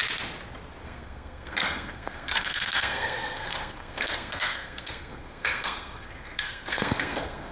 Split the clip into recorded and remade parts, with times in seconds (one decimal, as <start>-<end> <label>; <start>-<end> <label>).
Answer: 0.0-0.8 recorded; 0.8-7.5 remade